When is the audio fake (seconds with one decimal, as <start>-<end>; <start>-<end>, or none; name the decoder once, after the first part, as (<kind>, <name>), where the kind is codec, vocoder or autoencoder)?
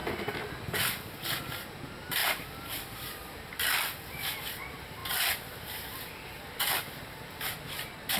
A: 2.2-3.6 (vocoder, BigVGAN v2); 5.0-7.0